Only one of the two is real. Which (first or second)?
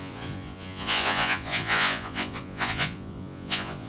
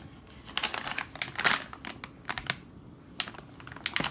second